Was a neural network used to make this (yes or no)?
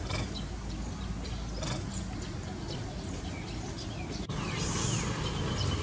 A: no